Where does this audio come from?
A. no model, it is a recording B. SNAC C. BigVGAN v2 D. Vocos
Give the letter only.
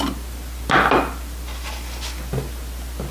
A